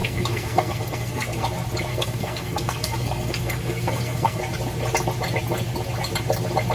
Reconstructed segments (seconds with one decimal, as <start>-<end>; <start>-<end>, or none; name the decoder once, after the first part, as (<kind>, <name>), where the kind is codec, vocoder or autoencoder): 0.0-1.5 (codec, SNAC); 1.9-4.4